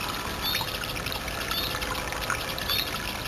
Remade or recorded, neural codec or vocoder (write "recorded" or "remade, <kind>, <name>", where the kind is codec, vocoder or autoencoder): recorded